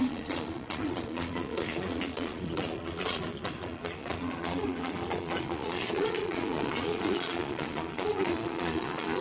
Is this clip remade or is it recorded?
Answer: remade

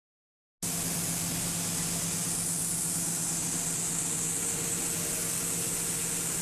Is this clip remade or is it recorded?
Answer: recorded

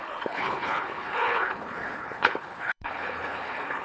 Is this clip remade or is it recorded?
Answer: remade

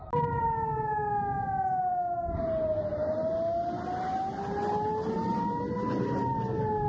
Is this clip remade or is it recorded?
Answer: recorded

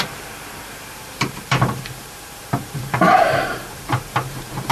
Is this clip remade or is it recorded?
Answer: remade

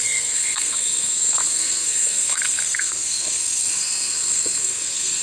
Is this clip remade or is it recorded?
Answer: remade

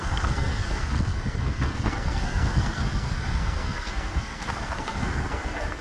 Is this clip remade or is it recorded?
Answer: remade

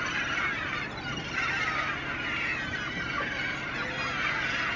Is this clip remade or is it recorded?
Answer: recorded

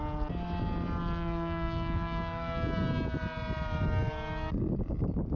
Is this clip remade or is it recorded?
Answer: recorded